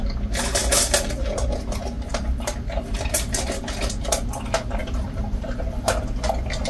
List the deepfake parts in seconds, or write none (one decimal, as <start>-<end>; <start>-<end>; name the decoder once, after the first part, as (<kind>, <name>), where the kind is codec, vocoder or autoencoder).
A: 2.1-3.6 (vocoder, BigVGAN v2); 4.8-6.0